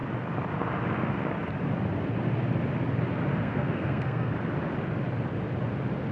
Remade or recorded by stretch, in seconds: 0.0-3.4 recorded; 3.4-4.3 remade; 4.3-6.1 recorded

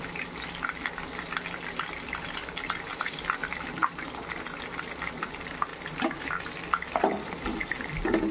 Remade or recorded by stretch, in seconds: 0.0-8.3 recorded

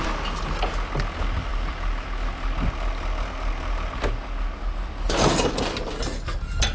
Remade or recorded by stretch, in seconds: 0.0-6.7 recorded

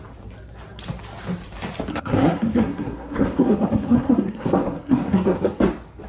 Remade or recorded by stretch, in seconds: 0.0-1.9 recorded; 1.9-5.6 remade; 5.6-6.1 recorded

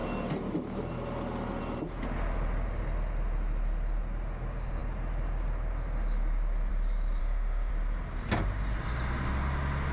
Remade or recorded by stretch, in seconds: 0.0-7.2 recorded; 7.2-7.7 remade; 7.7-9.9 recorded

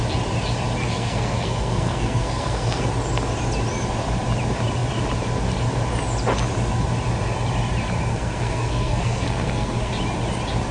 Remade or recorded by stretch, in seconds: 0.0-0.8 recorded; 0.8-2.9 remade; 2.9-8.1 recorded; 8.1-9.9 remade; 9.9-10.7 recorded